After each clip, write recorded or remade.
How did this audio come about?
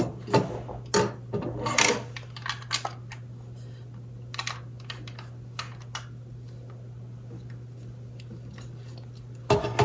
recorded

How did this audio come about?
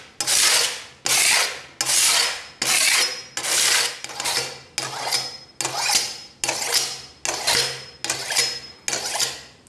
recorded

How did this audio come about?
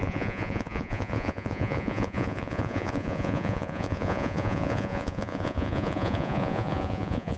remade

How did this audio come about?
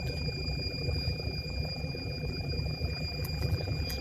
remade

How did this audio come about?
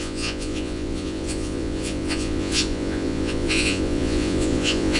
remade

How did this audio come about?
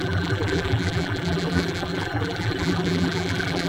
remade